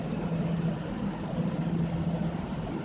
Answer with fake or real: real